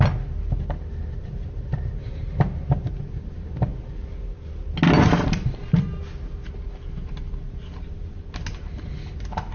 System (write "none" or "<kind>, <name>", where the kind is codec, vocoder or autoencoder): none